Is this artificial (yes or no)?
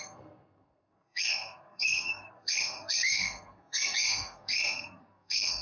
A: yes